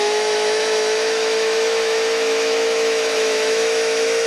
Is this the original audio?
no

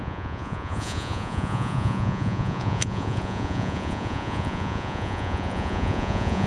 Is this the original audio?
no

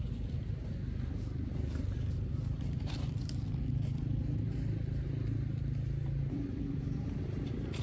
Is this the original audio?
yes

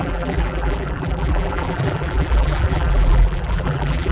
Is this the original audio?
no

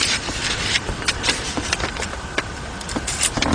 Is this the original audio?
no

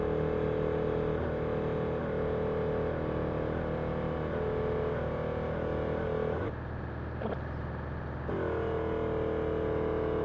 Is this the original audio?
yes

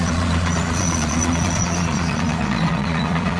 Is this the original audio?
no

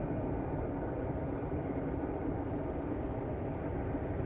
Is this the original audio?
yes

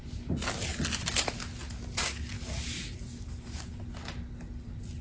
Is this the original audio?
yes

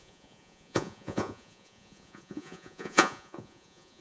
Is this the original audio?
no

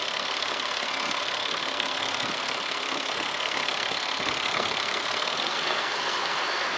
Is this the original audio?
no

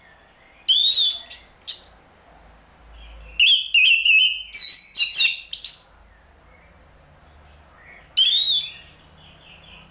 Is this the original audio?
yes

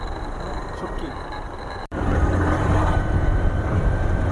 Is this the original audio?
no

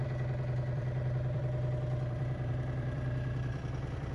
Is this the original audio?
no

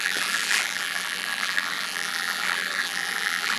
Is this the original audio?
no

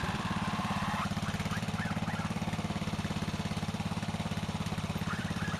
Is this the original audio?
no